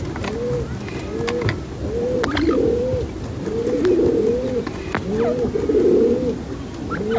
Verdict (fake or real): real